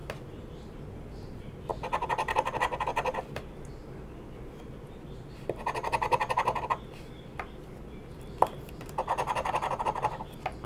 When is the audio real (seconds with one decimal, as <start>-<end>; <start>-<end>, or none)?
0.8-1.7; 2.6-8.0; 9.5-10.7